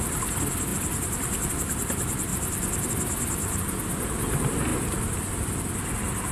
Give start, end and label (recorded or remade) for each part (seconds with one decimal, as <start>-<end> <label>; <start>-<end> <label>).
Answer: 0.0-2.3 recorded; 2.3-2.9 remade; 2.9-4.7 recorded; 4.7-5.6 remade; 5.6-6.3 recorded